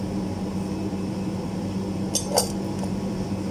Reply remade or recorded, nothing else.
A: remade